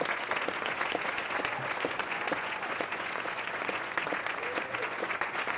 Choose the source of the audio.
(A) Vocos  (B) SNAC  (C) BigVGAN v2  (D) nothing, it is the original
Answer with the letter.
A